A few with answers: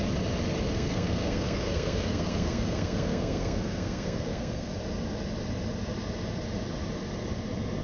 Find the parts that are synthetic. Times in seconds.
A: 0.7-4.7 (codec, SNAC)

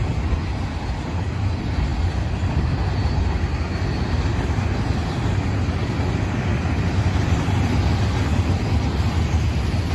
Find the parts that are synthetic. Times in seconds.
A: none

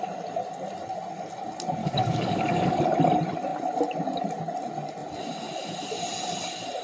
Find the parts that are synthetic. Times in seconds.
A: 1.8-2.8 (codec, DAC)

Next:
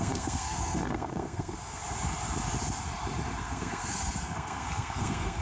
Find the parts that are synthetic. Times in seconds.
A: 0.0-1.8 (codec, SNAC); 3.4-5.4

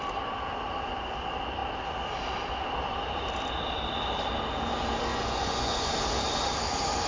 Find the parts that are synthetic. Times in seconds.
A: 5.1-5.9 (vocoder, Vocos)